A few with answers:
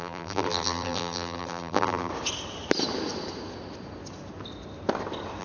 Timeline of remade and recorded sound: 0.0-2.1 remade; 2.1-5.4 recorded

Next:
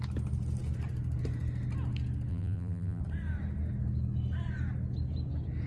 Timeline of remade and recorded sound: 0.0-2.3 recorded; 2.3-3.0 remade; 3.0-5.7 recorded

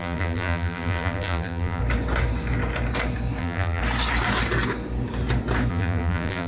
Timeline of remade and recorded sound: 0.0-1.8 remade; 1.8-3.4 recorded; 3.4-3.8 remade; 3.8-5.7 recorded; 5.7-6.5 remade

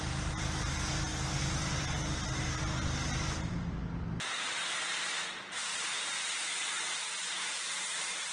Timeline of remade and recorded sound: 0.0-1.1 remade; 1.1-5.0 recorded; 5.0-5.7 remade; 5.7-6.6 recorded; 6.6-8.3 remade

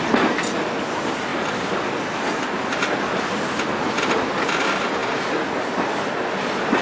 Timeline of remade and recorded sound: 0.0-1.3 recorded; 1.3-3.3 remade; 3.3-6.8 recorded

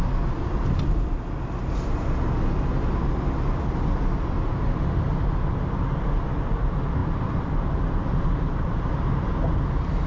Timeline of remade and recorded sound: 0.0-7.0 recorded; 7.0-8.9 remade; 8.9-10.1 recorded